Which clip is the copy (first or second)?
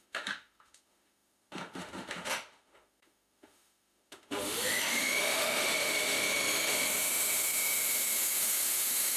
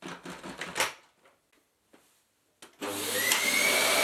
first